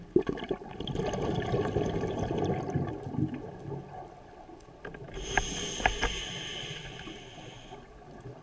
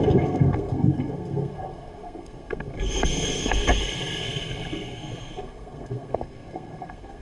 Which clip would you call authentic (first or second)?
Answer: first